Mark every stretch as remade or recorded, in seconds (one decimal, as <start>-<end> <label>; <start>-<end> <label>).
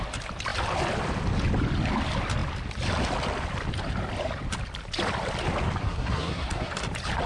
0.0-5.8 recorded; 5.8-6.7 remade; 6.7-7.3 recorded